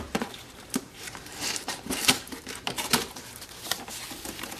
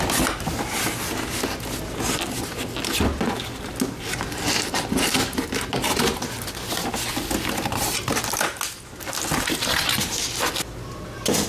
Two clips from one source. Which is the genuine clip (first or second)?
second